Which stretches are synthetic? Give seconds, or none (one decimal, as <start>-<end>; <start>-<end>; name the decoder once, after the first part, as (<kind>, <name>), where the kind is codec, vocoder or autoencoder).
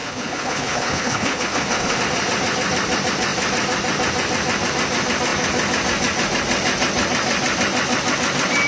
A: 0.0-2.0 (codec, HILCodec)